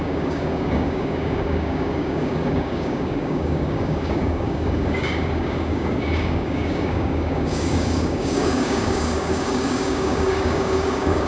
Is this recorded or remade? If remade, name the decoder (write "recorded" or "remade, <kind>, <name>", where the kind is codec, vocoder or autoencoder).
remade, codec, DAC